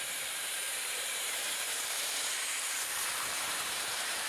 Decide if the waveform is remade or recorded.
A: remade